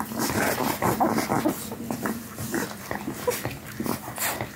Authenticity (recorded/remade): recorded